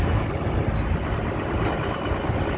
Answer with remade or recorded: recorded